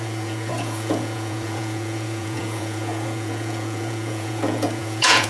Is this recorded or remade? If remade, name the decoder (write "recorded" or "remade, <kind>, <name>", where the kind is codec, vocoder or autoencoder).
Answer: remade, vocoder, Vocos